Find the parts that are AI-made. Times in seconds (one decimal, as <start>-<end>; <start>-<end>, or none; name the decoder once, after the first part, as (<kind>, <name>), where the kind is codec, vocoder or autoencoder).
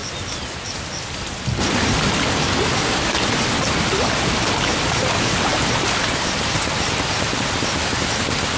none